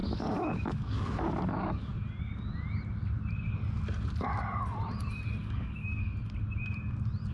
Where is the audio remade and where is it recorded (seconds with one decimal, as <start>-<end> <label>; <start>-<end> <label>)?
0.0-1.9 remade; 1.9-5.4 recorded; 5.4-6.1 remade; 6.1-7.3 recorded